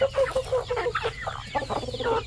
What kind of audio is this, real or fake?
real